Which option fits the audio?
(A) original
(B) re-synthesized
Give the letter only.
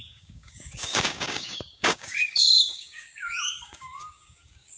B